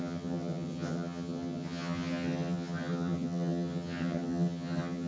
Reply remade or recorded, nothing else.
remade